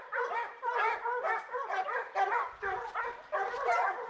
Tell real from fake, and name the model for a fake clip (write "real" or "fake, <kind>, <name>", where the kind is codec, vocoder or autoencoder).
real